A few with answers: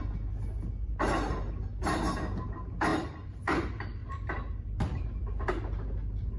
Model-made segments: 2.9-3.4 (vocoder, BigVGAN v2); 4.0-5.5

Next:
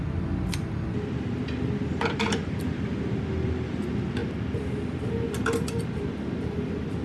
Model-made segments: none

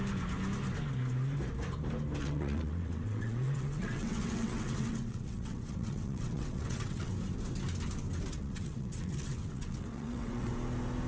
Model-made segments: 2.2-7.1 (vocoder, WaveNeXt); 8.3-10.5

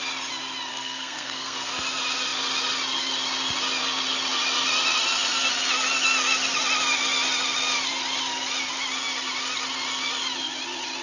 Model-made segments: 0.7-1.7 (codec, SNAC)

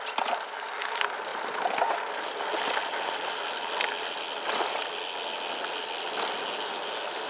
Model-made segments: none

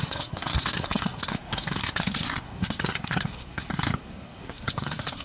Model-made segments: 0.0-5.2 (codec, SNAC)